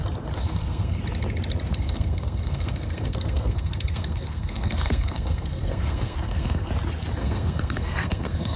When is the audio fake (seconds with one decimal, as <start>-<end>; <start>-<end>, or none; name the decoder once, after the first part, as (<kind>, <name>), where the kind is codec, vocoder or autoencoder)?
0.4-1.0 (codec, SNAC); 1.7-6.7; 7.2-8.6

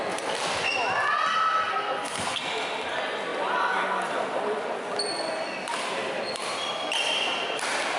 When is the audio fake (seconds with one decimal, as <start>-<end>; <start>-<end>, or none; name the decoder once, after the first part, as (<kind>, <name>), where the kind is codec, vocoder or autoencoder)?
1.7-2.4 (codec, SNAC)

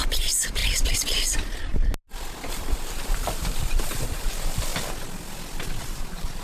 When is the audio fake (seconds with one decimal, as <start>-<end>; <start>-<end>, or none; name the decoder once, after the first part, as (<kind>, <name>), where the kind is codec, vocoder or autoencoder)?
0.0-0.6 (vocoder, BigVGAN v2); 2.5-4.7; 5.8-6.4